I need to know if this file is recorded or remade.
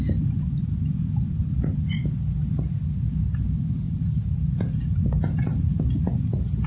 recorded